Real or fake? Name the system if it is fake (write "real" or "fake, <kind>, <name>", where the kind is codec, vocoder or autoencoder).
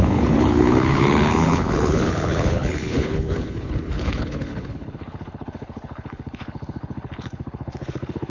fake, codec, HILCodec